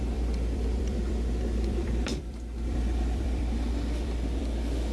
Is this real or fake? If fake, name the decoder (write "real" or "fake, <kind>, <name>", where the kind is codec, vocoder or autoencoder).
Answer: fake, vocoder, BigVGAN v2